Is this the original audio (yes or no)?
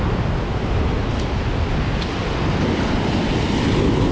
yes